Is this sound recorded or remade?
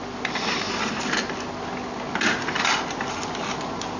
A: recorded